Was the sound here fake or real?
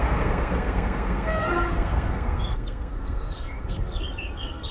fake